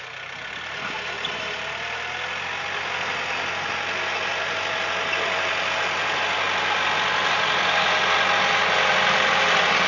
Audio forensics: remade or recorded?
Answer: recorded